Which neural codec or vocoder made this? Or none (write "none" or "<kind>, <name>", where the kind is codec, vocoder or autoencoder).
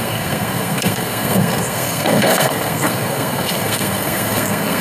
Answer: codec, SNAC